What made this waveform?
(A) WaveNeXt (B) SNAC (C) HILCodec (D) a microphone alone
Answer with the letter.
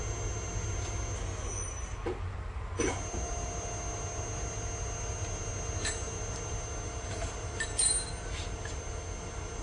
D